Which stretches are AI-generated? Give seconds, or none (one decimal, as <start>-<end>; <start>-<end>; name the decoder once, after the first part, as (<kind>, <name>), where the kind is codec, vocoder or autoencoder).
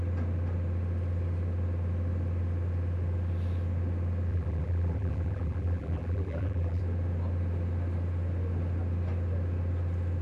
4.3-6.8 (vocoder, BigVGAN v2)